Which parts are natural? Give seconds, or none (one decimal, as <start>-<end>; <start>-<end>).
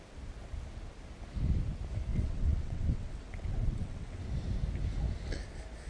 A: 0.0-2.1; 4.2-5.9